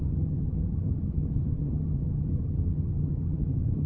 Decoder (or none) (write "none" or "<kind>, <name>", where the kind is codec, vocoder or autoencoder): vocoder, HiFi-GAN